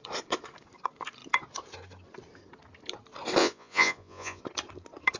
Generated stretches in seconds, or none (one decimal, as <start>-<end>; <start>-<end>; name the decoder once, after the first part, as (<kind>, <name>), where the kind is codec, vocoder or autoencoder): 3.4-4.4 (vocoder, Vocos)